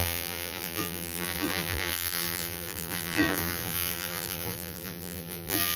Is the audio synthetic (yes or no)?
yes